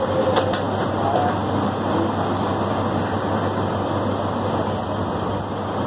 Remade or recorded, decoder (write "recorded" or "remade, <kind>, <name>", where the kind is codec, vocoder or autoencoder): recorded